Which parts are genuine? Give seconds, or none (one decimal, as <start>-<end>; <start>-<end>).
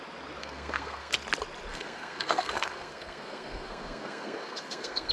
0.0-0.4; 1.1-1.7